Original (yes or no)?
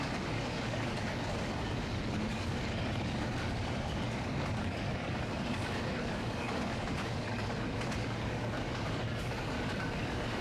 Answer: no